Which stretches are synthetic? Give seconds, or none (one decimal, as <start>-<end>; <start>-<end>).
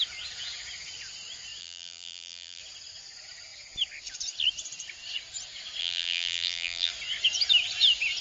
1.6-2.6; 5.8-6.9